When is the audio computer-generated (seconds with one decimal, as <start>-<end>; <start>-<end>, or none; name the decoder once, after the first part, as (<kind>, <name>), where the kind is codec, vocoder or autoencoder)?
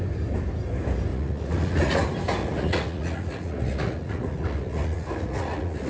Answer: 1.1-2.0 (vocoder, Vocos); 2.4-5.9